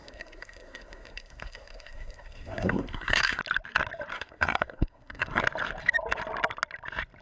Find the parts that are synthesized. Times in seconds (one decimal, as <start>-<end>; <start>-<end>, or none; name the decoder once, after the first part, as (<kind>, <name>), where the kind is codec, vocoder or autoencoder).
0.0-3.4 (codec, SNAC); 4.1-5.4